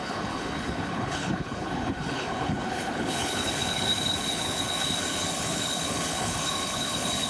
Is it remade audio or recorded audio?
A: remade